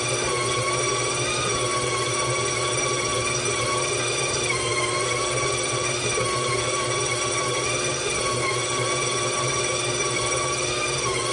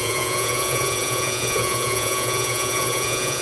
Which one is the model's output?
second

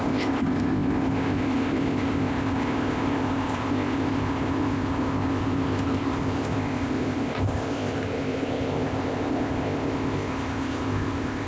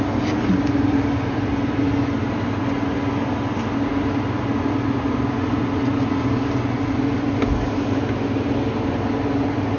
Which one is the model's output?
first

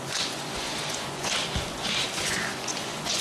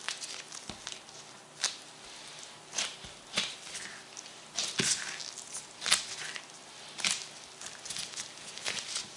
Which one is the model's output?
first